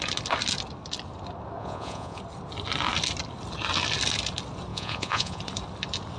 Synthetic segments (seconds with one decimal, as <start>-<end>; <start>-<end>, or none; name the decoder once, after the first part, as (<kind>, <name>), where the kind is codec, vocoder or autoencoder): 1.6-2.2 (vocoder, Vocos); 4.7-5.4